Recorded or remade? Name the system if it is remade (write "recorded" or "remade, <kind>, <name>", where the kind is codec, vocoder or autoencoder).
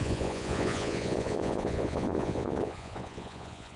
remade, vocoder, Vocos